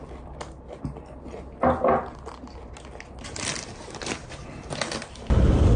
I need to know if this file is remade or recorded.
recorded